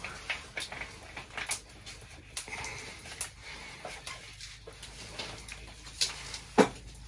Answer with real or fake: real